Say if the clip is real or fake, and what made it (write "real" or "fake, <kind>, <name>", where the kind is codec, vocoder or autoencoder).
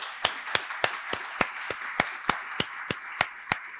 real